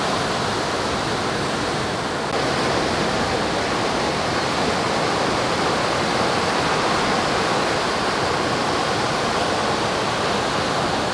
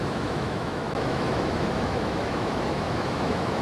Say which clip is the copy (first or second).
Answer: second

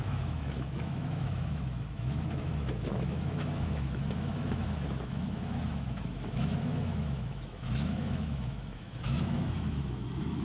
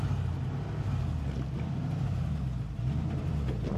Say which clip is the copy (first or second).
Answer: first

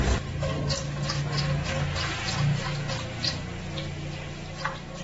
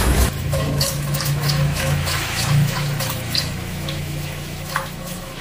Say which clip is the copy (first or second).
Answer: second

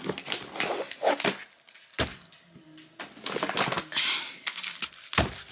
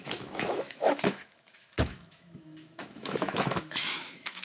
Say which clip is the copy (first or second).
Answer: second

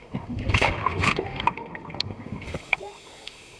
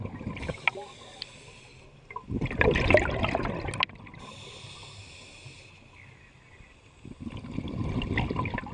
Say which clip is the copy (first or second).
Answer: first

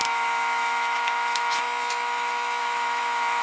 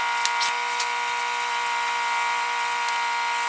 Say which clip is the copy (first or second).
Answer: first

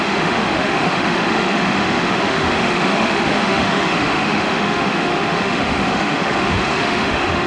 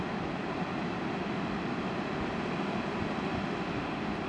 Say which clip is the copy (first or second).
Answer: first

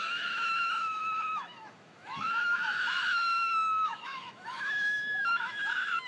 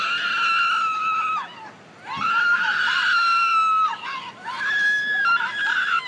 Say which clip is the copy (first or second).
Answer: first